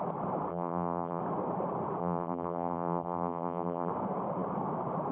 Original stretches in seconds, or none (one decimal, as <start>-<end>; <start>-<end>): 0.0-0.5; 1.2-2.0; 3.9-5.1